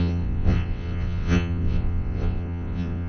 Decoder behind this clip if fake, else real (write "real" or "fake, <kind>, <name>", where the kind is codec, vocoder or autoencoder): fake, vocoder, WaveNeXt